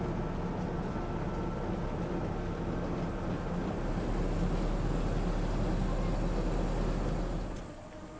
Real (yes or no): yes